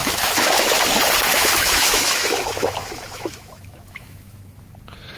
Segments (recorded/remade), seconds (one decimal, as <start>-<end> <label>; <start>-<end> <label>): 0.0-0.7 remade; 0.7-1.3 recorded; 1.3-4.4 remade; 4.4-5.2 recorded